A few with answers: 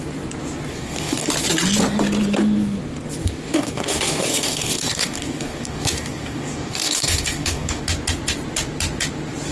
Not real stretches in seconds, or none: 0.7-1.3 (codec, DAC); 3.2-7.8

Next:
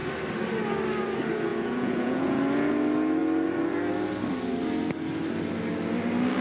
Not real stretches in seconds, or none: 1.5-2.4 (vocoder, Vocos)

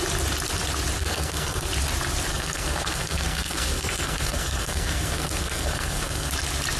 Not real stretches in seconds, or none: 1.0-1.7 (codec, SNAC); 2.3-6.3

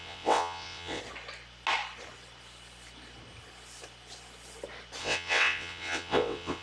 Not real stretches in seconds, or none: 0.0-1.0 (vocoder, WaveNeXt); 5.0-6.6

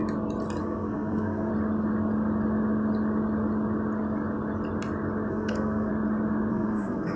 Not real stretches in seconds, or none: 0.6-1.5 (codec, SNAC); 5.3-5.9; 6.5-7.2

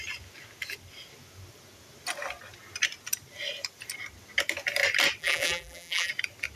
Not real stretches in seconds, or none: 5.2-6.1 (vocoder, BigVGAN v2)

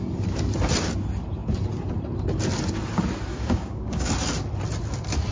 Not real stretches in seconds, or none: 3.3-4.1 (codec, DAC)